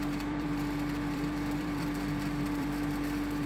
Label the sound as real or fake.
fake